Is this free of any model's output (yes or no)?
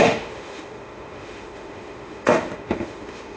no